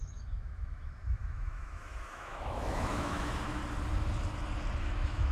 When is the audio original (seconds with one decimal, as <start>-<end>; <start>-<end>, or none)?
3.6-4.8